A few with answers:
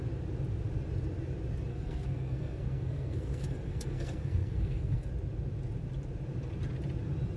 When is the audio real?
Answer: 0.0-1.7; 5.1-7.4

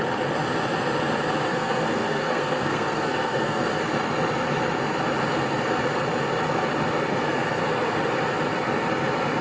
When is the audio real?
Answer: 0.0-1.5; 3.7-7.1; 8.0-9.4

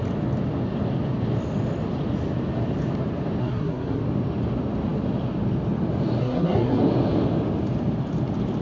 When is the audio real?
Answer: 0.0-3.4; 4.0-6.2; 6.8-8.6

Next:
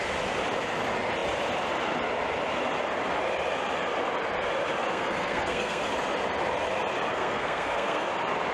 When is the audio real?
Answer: 0.0-4.9; 5.8-7.1; 8.1-8.5